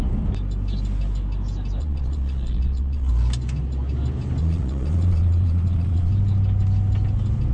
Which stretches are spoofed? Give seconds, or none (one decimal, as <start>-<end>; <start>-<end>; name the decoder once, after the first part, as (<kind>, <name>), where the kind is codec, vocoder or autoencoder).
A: 1.8-3.1 (vocoder, Vocos); 4.4-6.1